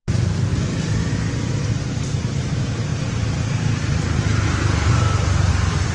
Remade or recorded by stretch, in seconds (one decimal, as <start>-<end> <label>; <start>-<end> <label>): 0.0-0.5 recorded; 0.5-1.1 remade; 1.1-2.9 recorded; 2.9-5.5 remade; 5.5-5.9 recorded